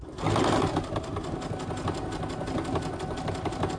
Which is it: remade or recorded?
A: recorded